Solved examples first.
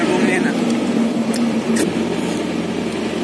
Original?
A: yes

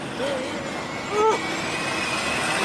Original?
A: yes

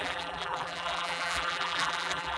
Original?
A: no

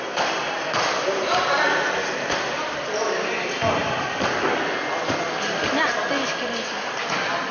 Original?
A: yes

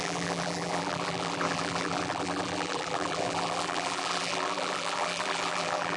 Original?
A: no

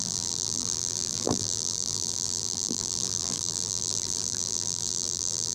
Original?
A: no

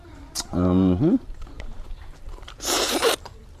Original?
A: no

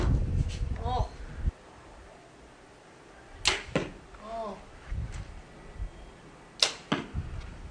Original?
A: yes